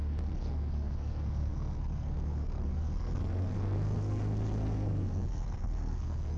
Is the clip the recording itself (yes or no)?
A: no